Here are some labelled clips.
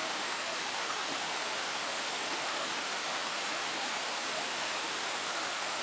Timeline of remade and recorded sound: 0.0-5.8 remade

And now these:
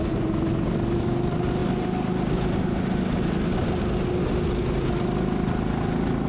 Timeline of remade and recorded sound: 0.0-6.3 recorded